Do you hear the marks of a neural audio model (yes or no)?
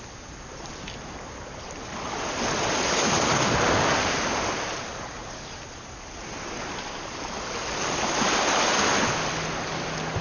no